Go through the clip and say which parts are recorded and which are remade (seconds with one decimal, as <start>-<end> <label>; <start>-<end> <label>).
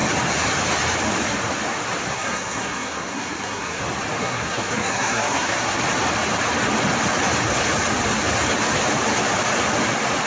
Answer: 0.0-2.1 recorded; 2.1-3.8 remade; 3.8-4.2 recorded; 4.2-5.8 remade; 5.8-10.3 recorded